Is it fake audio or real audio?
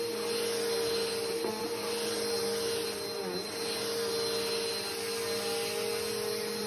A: real